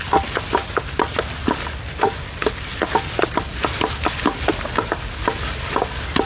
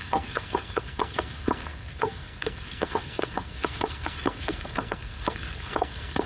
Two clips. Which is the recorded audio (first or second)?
first